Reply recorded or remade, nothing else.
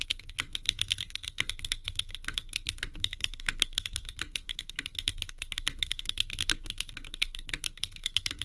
remade